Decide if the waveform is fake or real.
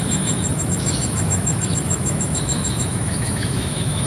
fake